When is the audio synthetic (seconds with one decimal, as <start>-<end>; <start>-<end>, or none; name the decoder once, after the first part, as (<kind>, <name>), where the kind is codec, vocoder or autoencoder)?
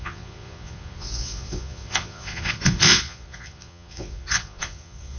0.0-5.2 (vocoder, Vocos)